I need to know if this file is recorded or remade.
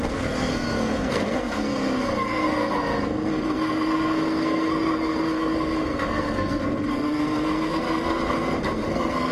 remade